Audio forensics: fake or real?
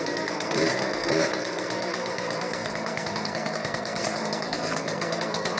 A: fake